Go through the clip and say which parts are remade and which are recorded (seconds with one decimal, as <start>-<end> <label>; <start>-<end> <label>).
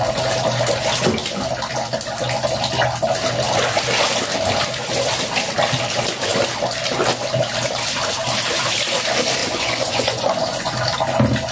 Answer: 0.0-9.4 recorded; 9.4-10.7 remade; 10.7-11.5 recorded